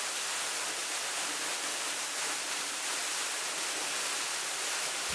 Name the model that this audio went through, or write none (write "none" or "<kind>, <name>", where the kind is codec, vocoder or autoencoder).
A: none